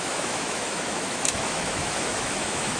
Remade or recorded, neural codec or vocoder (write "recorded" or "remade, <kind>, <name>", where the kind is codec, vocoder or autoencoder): remade, autoencoder, DAC-VAE